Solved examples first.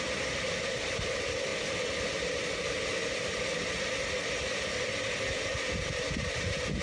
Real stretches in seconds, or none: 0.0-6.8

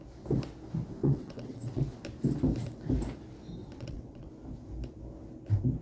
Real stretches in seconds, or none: 0.0-1.0; 1.8-3.6; 4.3-5.8

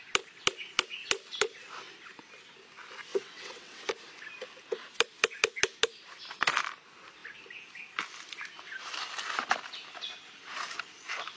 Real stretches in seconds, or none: 0.0-3.1; 3.9-11.4

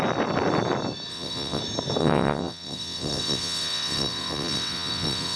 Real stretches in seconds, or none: 0.0-1.1; 1.6-2.0

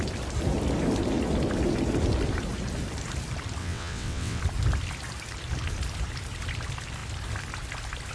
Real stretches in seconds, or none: 0.0-3.6; 4.4-8.1

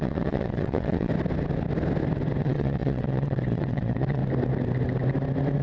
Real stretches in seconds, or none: 1.1-2.4; 4.2-5.6

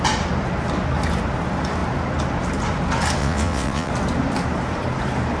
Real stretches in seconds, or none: 0.0-3.2; 3.9-5.4

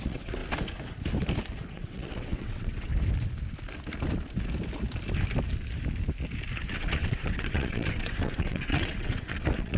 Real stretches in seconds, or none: 0.4-1.7; 2.9-6.7